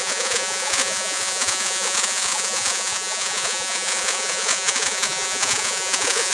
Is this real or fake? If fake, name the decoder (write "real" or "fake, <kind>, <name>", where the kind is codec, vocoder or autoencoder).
fake, vocoder, Vocos